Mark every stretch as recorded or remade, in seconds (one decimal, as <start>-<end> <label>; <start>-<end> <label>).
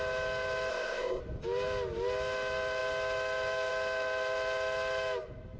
0.0-0.7 recorded; 0.7-1.2 remade; 1.2-5.6 recorded